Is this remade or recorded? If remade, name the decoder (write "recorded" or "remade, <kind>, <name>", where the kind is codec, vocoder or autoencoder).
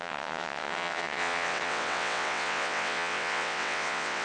remade, vocoder, WaveNeXt